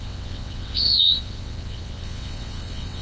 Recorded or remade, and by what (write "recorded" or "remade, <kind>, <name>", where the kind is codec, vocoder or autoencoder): remade, vocoder, WaveNeXt